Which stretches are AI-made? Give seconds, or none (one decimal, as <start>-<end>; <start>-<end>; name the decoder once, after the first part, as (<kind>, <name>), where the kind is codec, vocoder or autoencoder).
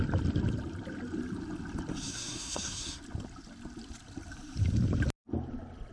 2.1-3.0 (codec, SNAC)